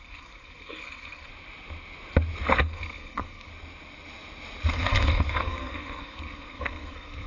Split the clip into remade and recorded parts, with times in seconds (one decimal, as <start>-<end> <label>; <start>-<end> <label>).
0.0-1.3 remade; 1.3-2.6 recorded; 2.6-3.5 remade; 3.5-4.7 recorded; 4.7-7.3 remade